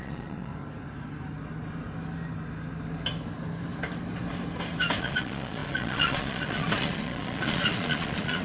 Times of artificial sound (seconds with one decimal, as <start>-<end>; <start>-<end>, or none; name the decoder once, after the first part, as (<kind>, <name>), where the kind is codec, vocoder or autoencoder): 0.0-0.5 (vocoder, Vocos); 5.0-8.4